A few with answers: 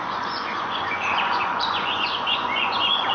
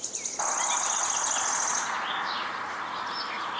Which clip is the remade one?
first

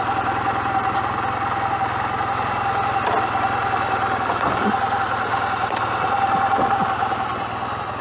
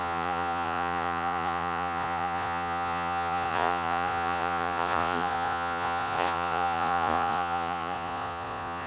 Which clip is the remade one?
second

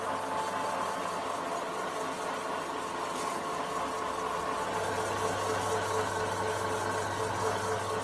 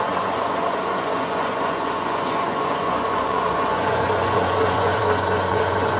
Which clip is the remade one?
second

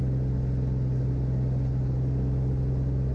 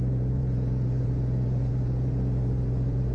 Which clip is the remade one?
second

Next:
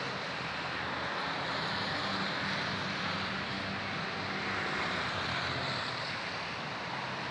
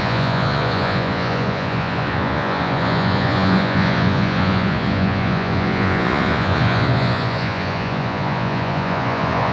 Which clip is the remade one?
second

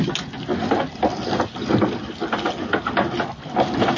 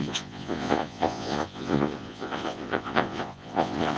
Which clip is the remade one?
second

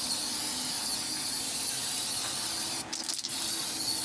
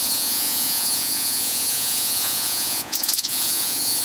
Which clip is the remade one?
second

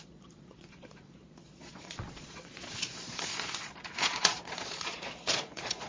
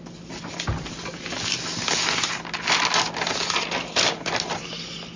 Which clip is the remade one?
first